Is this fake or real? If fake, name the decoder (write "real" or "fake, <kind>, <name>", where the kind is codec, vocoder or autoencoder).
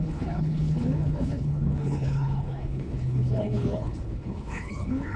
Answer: fake, codec, HILCodec